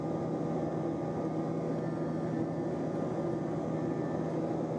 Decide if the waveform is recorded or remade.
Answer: recorded